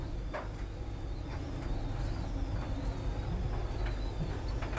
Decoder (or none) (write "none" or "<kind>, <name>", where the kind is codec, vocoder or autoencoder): none